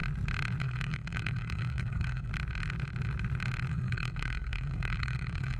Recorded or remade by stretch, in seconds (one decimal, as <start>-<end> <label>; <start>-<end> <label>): 0.0-0.6 recorded; 0.6-2.3 remade; 2.3-3.7 recorded; 3.7-5.6 remade